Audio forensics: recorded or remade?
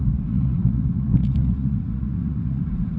remade